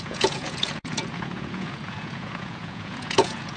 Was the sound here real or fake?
fake